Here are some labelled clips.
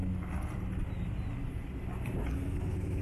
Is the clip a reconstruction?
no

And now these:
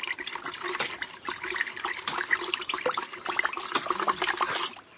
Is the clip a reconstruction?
no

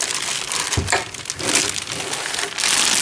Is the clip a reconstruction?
no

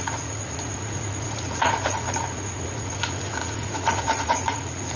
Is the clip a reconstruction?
yes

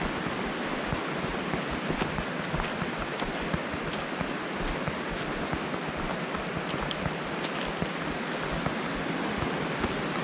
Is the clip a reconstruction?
no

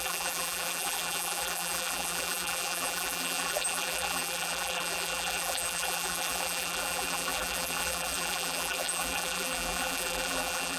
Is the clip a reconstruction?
yes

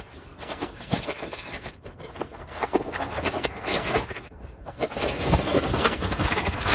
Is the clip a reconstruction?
yes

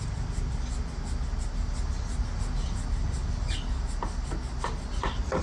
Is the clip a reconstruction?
no